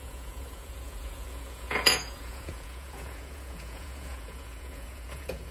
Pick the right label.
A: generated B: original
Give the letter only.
A